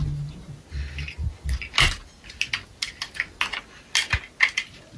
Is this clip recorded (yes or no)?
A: yes